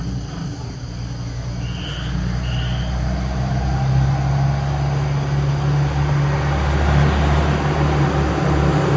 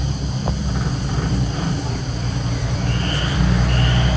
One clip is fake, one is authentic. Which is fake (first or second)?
second